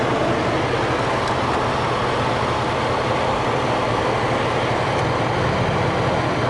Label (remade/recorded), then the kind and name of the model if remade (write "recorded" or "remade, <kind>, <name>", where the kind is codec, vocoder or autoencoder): recorded